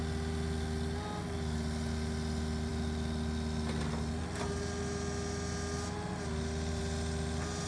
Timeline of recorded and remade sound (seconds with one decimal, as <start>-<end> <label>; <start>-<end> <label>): 0.0-7.7 recorded